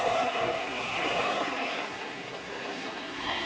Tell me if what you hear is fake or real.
fake